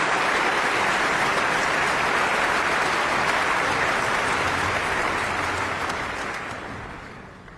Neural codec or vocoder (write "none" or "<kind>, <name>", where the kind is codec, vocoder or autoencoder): none